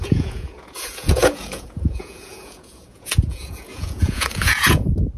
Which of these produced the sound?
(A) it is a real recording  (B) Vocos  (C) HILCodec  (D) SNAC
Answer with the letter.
B